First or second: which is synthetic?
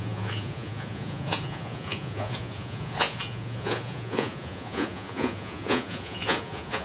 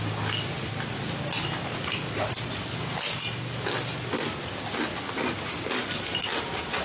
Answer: first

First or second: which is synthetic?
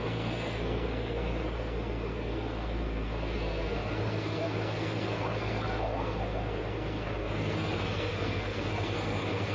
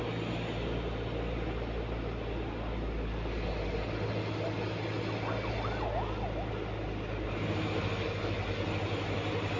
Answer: first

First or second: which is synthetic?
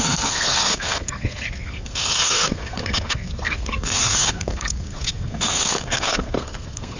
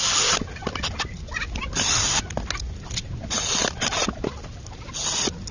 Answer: first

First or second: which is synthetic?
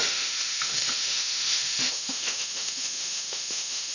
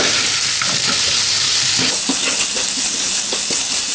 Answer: first